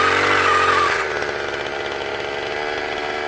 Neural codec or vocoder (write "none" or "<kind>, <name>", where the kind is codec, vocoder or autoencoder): none